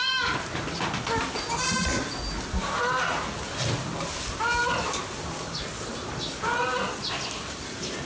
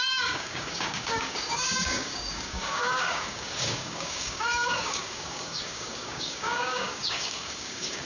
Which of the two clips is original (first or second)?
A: first